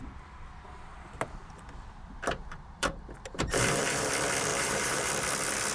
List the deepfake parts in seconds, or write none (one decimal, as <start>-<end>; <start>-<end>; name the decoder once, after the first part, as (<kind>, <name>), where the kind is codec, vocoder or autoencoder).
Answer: 0.9-4.1 (vocoder, BigVGAN v2); 4.5-5.1